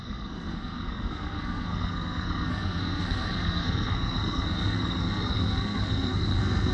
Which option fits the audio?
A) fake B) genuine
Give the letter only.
A